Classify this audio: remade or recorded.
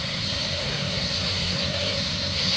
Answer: remade